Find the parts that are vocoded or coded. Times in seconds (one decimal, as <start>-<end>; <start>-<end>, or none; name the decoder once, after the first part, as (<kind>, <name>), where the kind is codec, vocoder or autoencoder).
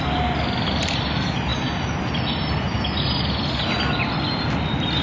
none